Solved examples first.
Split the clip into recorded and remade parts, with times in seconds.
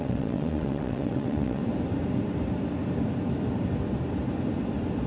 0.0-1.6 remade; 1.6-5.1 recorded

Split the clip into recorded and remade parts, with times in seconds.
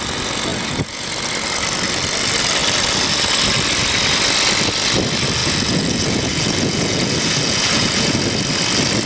0.0-0.5 recorded; 0.5-1.1 remade; 1.1-5.4 recorded; 5.4-8.2 remade; 8.2-9.1 recorded